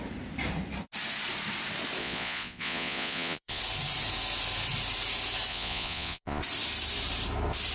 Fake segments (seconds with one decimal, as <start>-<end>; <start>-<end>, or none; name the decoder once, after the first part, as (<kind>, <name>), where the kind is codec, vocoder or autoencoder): 2.0-3.6 (vocoder, Vocos); 5.5-6.4